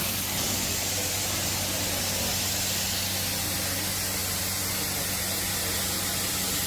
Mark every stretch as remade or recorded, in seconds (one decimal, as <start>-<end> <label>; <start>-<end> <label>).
0.0-6.7 recorded